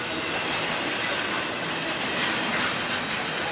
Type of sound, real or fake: real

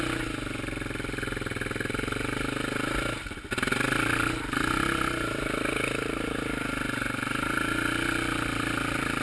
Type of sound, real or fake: real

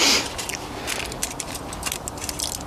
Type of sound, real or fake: real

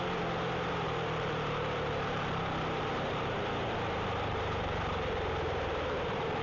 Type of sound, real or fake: fake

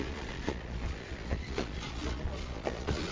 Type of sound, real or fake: fake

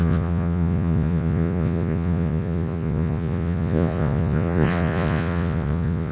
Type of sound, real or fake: fake